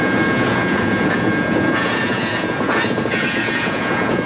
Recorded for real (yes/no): no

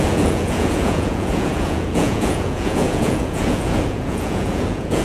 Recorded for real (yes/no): no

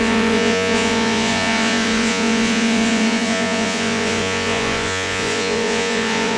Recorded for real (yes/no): no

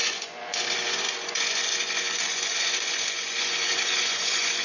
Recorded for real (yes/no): no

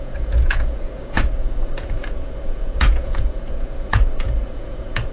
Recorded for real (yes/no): no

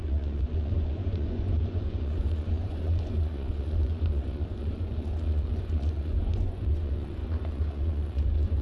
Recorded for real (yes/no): no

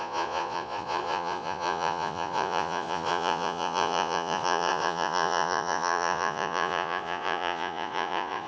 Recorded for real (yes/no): no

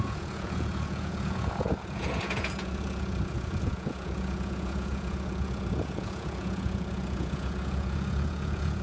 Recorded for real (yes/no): no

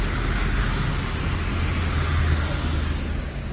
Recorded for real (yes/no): yes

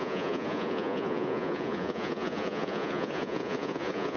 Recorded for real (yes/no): no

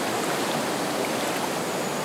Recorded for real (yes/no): yes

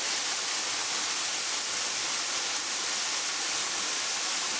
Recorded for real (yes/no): yes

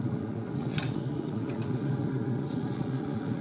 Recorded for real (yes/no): no